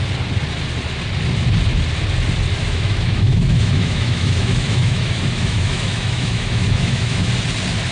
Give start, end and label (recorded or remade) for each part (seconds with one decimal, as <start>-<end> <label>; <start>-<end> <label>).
0.0-2.6 recorded; 2.6-7.3 remade; 7.3-7.9 recorded